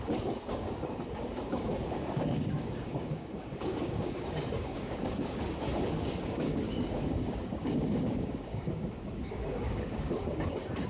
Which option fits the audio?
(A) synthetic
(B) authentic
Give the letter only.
A